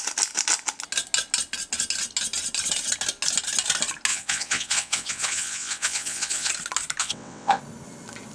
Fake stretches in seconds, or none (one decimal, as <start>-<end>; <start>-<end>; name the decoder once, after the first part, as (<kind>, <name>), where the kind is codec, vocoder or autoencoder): 4.1-6.5 (vocoder, WaveNeXt); 7.0-7.6